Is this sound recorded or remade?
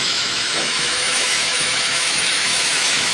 remade